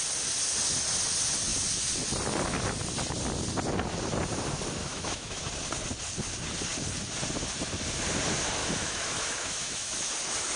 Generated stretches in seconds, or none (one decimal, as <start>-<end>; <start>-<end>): 4.8-5.4; 8.6-10.1